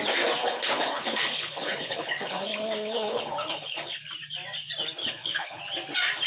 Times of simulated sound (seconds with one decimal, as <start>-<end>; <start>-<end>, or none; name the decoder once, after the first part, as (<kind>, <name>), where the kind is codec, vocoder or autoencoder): 0.4-4.0 (codec, HILCodec); 5.0-5.6